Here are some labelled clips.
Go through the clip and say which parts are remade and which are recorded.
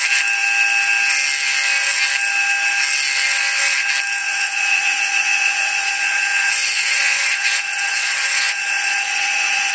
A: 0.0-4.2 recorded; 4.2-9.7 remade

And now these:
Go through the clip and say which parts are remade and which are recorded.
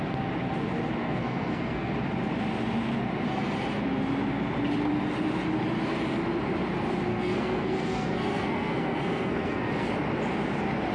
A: 0.0-1.0 recorded; 1.0-1.9 remade; 1.9-7.1 recorded; 7.1-9.9 remade; 9.9-10.9 recorded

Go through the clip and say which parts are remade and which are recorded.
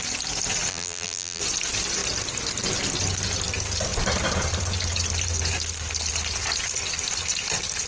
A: 0.0-0.7 recorded; 0.7-1.4 remade; 1.4-7.9 recorded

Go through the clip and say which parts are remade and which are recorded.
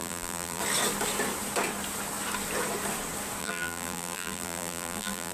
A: 0.0-0.6 remade; 0.6-3.4 recorded; 3.4-5.3 remade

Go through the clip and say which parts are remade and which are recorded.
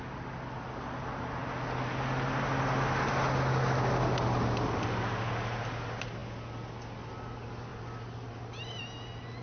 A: 0.0-9.4 recorded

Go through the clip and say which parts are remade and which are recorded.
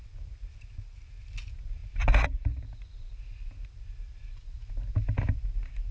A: 0.0-5.9 recorded